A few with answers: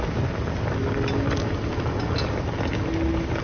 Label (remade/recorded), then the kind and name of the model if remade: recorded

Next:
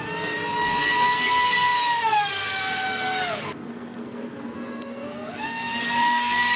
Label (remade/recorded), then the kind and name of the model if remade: remade, codec, SNAC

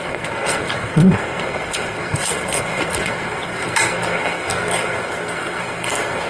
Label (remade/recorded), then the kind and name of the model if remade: remade, codec, SNAC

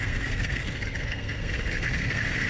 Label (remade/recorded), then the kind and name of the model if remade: remade, codec, SNAC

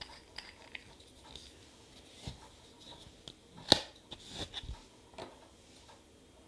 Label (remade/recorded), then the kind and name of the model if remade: recorded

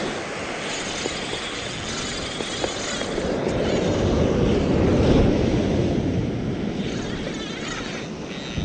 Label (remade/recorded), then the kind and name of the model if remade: recorded